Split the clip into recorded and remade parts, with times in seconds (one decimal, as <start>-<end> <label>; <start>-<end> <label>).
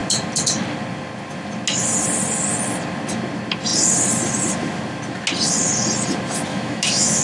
0.0-6.5 recorded; 6.5-7.2 remade